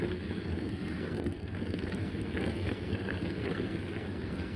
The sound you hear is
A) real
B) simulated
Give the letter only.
B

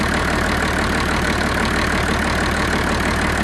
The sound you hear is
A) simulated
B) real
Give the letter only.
B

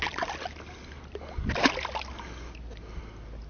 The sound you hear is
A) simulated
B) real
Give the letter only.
B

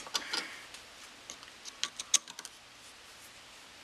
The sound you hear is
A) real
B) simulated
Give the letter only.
A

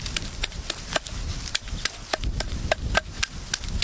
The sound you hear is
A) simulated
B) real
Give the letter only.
B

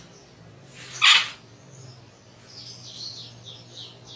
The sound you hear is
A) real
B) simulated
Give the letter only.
A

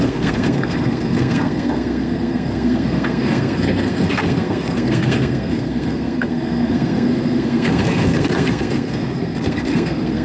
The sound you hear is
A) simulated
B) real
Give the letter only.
A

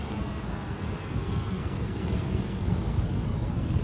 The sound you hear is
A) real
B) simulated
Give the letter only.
B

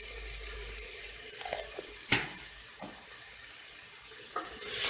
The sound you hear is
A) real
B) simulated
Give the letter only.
A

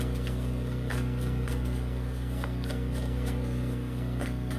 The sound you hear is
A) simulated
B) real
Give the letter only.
A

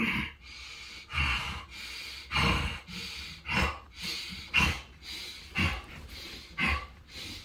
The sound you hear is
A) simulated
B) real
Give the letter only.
B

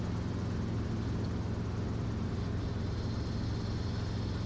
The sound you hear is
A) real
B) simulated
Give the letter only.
A